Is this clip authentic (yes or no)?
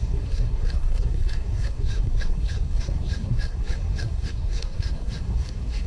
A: no